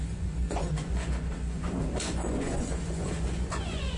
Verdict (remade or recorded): remade